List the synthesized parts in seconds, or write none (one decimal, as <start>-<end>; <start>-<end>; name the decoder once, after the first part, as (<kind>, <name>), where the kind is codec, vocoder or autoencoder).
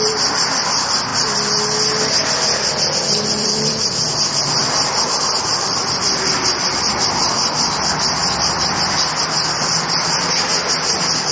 0.0-1.1 (vocoder, BigVGAN v2); 3.0-11.3